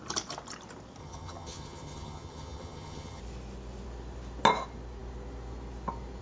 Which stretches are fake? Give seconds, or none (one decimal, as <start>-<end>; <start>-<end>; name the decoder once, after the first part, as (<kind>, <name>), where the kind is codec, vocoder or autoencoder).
1.0-3.2 (vocoder, HiFi-GAN)

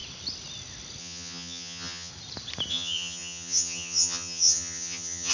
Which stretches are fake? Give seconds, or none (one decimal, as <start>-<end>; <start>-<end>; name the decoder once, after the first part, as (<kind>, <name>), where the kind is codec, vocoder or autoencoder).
1.0-2.1 (vocoder, HiFi-GAN); 2.7-5.3

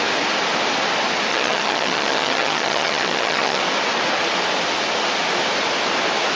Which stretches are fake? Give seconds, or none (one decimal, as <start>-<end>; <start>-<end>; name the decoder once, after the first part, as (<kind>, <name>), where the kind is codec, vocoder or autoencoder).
1.3-3.6 (vocoder, HiFi-GAN)

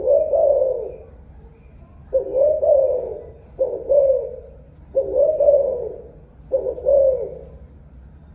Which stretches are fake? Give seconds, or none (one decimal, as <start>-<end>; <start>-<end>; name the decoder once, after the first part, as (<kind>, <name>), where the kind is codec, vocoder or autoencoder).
none

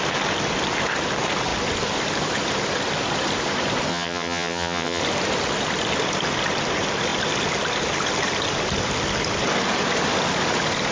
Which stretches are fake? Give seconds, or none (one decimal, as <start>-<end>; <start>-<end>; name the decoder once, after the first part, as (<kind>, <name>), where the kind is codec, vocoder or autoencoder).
3.9-5.0 (vocoder, HiFi-GAN)